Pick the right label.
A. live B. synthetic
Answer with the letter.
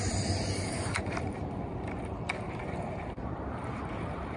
B